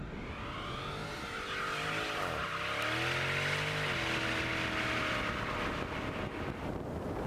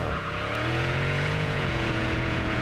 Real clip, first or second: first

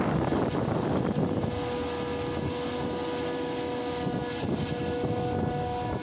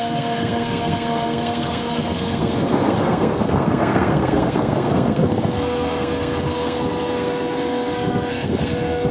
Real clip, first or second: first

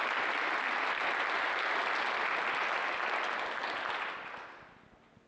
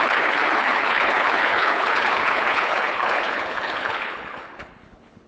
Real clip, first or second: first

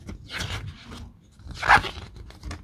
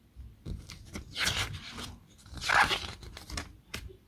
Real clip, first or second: first